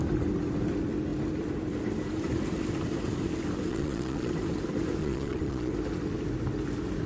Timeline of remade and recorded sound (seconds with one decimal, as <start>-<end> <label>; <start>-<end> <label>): 0.0-3.7 recorded; 3.7-4.3 remade; 4.3-5.0 recorded; 5.0-5.7 remade; 5.7-7.1 recorded